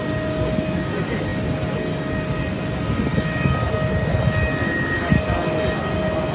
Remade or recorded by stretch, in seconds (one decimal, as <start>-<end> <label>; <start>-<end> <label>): 0.0-6.3 recorded